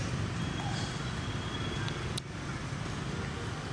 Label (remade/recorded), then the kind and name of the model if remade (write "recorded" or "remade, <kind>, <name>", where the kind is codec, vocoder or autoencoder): recorded